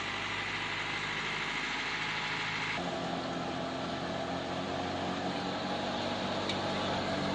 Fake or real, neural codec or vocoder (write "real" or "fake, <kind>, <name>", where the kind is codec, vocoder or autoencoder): real